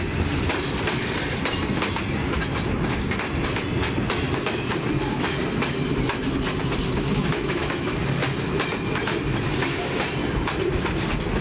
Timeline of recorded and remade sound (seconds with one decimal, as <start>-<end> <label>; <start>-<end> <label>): 0.0-7.2 recorded; 7.2-8.0 remade; 8.0-11.4 recorded